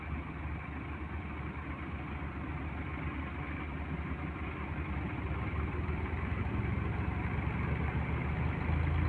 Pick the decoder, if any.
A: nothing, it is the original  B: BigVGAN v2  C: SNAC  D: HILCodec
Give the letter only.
A